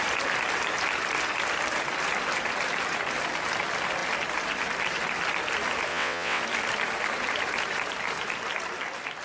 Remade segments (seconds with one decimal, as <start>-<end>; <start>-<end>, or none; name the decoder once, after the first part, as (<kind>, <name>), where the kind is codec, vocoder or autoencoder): 5.9-6.4 (vocoder, WaveNeXt)